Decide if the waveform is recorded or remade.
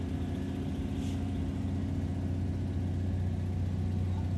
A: recorded